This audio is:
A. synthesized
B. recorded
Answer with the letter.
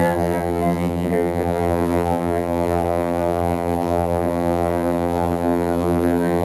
A